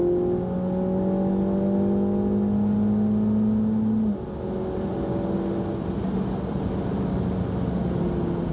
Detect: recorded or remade recorded